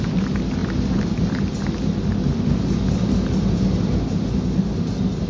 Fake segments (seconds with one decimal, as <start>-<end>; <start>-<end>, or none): none

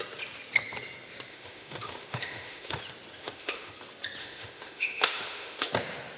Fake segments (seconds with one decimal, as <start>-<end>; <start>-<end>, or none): 1.3-2.8; 3.2-3.7; 4.2-5.7

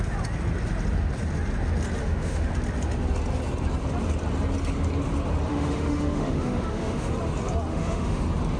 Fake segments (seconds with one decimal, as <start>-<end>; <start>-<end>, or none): 2.0-2.5; 5.5-7.1; 7.7-8.2

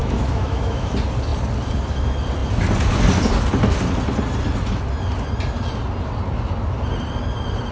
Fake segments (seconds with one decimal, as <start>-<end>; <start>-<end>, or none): 0.0-0.9

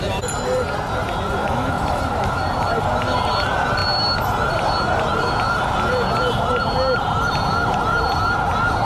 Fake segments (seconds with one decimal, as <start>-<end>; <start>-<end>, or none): 1.4-2.0

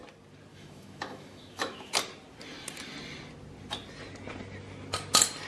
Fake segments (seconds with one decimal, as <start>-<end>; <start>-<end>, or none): 0.5-1.9